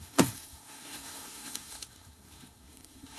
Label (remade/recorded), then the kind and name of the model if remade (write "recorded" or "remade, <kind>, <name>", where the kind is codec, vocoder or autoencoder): remade, codec, SNAC